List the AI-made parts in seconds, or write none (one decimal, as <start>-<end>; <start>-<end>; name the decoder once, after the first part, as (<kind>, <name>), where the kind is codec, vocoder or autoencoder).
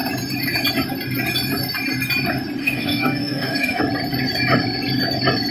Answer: 2.6-3.8 (autoencoder, DAC-VAE)